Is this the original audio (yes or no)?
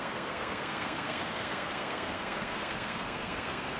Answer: no